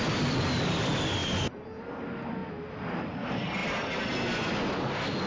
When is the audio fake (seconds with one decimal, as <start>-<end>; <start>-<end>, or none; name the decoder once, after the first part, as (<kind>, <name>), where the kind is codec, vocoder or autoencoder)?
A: none